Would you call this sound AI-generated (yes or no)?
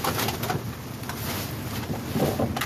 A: no